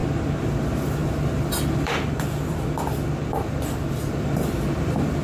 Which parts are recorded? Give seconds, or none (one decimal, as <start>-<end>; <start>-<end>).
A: 0.0-0.6